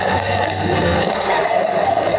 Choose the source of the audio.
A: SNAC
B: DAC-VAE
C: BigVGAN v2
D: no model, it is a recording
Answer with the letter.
A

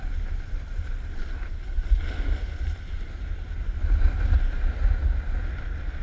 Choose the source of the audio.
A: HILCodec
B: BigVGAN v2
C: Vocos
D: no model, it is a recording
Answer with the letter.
D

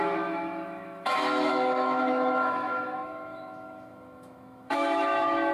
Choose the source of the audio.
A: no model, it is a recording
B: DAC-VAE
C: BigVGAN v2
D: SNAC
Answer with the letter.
B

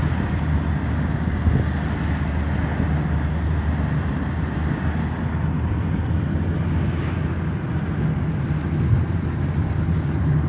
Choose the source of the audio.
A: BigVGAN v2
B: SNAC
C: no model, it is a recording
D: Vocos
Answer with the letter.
C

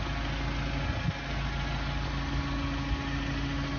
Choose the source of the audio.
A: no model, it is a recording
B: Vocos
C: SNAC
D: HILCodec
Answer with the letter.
A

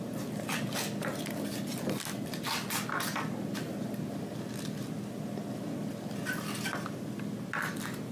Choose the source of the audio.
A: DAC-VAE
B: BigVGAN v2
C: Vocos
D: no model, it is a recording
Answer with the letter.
D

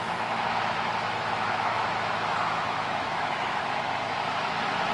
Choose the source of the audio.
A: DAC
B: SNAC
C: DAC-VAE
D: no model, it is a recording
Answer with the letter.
C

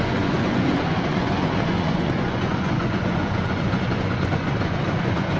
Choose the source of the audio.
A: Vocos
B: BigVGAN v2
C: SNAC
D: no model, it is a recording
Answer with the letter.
A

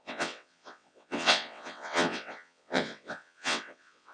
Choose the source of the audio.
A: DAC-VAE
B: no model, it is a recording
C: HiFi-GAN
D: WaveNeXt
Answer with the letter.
D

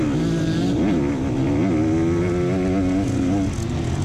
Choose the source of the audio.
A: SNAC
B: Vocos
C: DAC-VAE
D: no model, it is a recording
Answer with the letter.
D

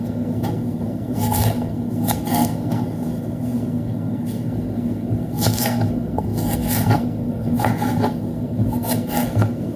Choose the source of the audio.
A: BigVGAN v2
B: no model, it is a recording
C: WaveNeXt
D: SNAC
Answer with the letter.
D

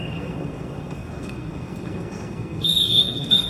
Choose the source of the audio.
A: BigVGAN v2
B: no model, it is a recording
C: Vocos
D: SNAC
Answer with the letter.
D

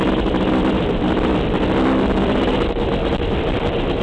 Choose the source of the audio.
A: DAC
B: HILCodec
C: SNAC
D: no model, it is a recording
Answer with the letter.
D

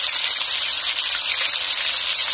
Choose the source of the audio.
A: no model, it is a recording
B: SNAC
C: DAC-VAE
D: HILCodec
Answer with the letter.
A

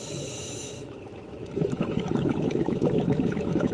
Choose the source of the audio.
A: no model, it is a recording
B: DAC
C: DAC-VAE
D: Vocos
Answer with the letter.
C